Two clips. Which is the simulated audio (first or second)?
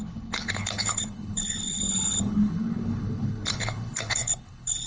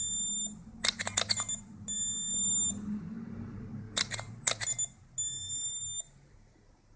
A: first